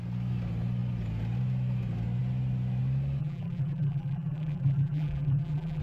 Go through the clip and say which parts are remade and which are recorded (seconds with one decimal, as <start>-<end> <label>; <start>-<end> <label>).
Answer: 0.0-3.2 recorded; 3.2-5.8 remade